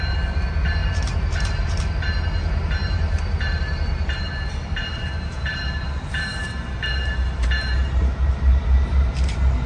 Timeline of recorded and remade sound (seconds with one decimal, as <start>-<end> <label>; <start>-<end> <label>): 0.0-0.8 recorded; 0.8-1.8 remade; 1.8-2.8 recorded; 2.8-4.2 remade; 4.2-4.8 recorded; 4.8-9.1 remade; 9.1-9.7 recorded